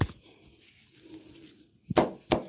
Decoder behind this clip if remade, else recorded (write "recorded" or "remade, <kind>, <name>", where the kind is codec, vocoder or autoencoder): recorded